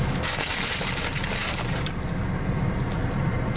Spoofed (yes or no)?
yes